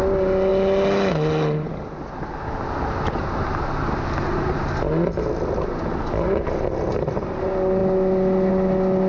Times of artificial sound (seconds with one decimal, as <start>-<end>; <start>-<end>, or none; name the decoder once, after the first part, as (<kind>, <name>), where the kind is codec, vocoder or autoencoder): none